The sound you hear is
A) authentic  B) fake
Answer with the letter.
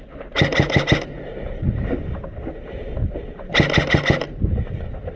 A